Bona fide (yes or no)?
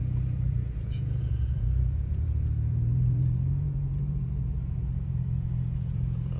no